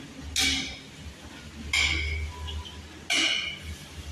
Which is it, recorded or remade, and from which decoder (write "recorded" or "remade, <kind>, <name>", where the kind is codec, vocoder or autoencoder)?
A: recorded